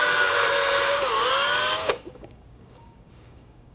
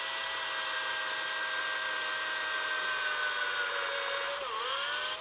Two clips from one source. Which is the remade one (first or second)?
first